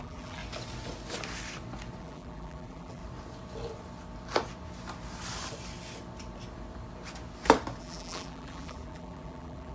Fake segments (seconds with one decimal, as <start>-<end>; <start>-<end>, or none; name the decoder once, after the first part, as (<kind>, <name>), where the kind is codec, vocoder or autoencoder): 0.0-0.4 (vocoder, BigVGAN v2); 2.0-3.0; 7.8-9.7

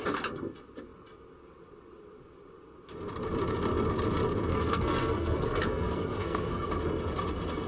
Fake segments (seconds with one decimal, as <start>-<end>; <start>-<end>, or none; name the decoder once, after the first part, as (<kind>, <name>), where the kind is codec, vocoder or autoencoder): 4.5-6.7 (codec, SNAC)

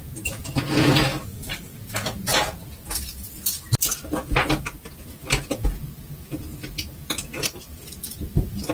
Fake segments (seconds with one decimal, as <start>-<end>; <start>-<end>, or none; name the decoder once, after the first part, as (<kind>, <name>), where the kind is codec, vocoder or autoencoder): 1.1-1.8 (codec, DAC)

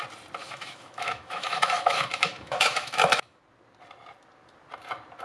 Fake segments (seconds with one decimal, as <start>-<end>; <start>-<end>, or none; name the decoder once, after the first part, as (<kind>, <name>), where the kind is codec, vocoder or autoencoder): 0.4-3.4 (autoencoder, DAC-VAE)

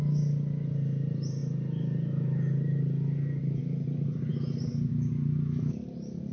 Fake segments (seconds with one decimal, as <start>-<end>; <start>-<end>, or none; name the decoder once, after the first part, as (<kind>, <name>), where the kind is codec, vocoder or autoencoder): none